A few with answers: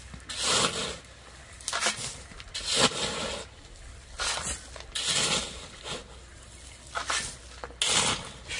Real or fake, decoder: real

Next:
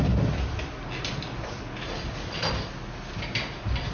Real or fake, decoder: real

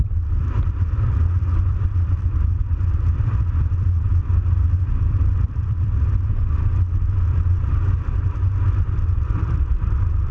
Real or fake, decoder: fake, vocoder, BigVGAN v2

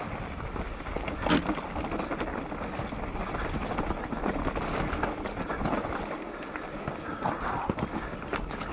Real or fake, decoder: real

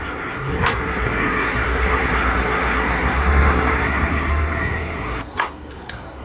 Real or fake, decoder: fake, codec, SNAC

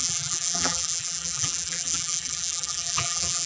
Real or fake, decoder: fake, vocoder, BigVGAN v2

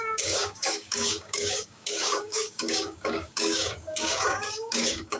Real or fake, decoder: fake, codec, DAC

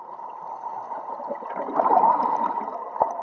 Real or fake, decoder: fake, vocoder, BigVGAN v2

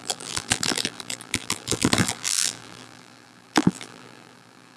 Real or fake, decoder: fake, vocoder, BigVGAN v2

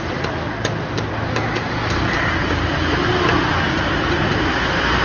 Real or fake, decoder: real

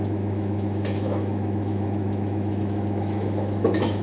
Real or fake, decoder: fake, autoencoder, DAC-VAE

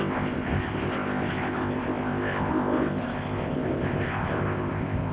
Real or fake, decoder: fake, codec, ZipCodec